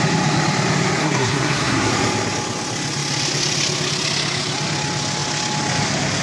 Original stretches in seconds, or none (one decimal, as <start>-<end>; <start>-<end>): 0.0-1.0; 1.9-6.2